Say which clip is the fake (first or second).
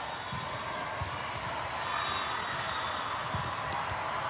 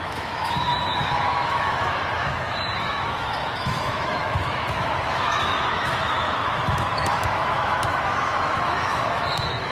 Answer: second